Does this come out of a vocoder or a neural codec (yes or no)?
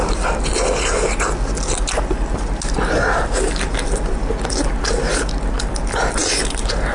no